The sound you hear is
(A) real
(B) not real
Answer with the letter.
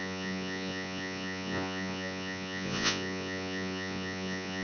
B